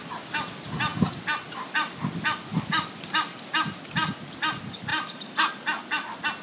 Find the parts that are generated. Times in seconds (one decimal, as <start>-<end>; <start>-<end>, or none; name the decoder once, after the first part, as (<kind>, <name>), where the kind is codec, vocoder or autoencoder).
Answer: 2.5-3.8 (vocoder, BigVGAN v2); 4.9-5.8